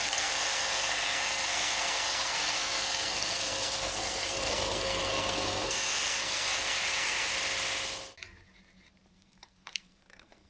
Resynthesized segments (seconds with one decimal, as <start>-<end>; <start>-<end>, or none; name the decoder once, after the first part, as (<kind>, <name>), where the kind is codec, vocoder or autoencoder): 0.0-7.3 (codec, SNAC); 9.1-10.5